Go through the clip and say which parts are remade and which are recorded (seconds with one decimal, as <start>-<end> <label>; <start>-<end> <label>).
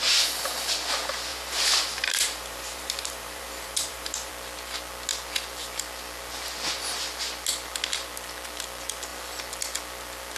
0.0-1.3 recorded; 1.3-4.3 remade; 4.3-10.4 recorded